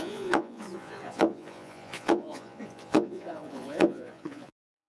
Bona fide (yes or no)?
no